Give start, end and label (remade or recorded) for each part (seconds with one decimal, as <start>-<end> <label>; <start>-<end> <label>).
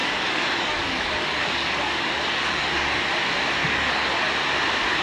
0.0-3.0 remade; 3.0-3.6 recorded; 3.6-4.1 remade; 4.1-5.0 recorded